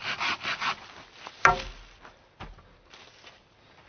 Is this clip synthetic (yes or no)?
no